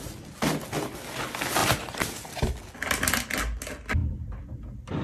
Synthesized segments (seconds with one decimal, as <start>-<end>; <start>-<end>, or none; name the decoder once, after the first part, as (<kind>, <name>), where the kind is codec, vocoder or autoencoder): 1.6-2.5 (vocoder, BigVGAN v2)